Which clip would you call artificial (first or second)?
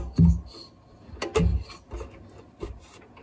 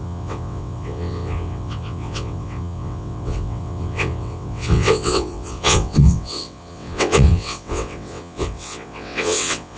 second